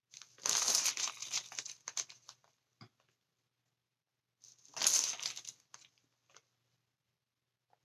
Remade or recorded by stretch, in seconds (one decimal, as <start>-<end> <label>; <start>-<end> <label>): 0.0-7.8 recorded